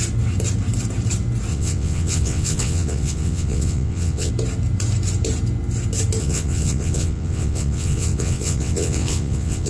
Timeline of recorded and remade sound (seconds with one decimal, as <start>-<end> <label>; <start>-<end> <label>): 0.0-1.5 recorded; 1.5-4.3 remade; 4.3-6.2 recorded; 6.2-9.7 remade